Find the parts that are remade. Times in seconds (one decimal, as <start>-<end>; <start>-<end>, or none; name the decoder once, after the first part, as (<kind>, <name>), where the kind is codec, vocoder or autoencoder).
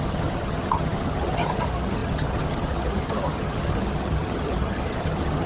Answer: 0.0-5.5 (vocoder, HiFi-GAN)